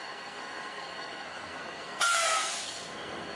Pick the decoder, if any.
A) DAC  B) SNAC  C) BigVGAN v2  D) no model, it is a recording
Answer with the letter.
B